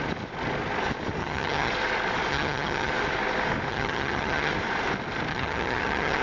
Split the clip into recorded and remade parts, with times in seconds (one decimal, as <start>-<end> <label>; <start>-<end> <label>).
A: 0.0-1.2 recorded; 1.2-1.7 remade; 1.7-2.3 recorded; 2.3-2.9 remade; 2.9-3.7 recorded; 3.7-4.5 remade; 4.5-5.3 recorded; 5.3-6.2 remade